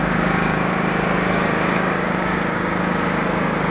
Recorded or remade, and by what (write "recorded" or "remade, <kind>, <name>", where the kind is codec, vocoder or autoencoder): remade, codec, DAC